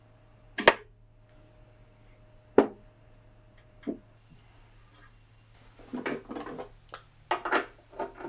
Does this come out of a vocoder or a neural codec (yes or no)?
no